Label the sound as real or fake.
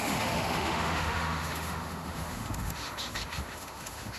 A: fake